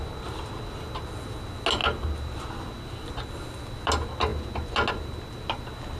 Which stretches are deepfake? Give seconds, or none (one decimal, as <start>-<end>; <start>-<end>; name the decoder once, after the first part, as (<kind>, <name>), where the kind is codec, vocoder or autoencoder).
none